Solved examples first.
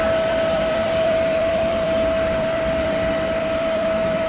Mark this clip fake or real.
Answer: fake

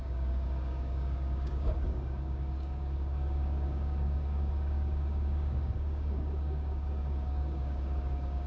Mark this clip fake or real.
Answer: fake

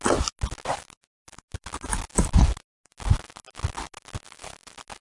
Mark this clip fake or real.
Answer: real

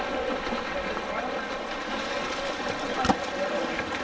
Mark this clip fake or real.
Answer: real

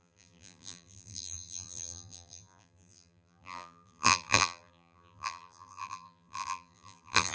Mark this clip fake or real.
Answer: fake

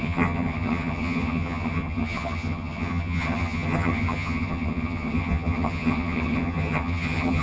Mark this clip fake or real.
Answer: fake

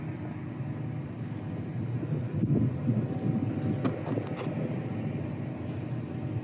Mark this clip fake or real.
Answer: real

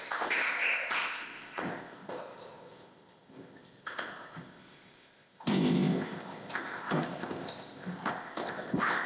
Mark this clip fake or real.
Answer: fake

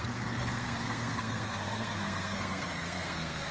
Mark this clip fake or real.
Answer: fake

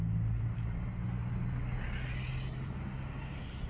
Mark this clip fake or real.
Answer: real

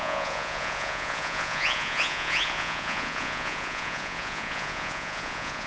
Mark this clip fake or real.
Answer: fake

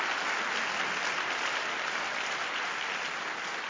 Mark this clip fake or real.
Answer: real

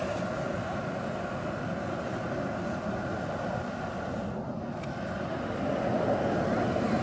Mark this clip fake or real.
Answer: real